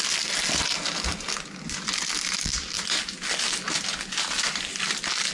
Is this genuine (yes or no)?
yes